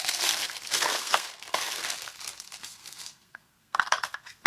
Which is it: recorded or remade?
remade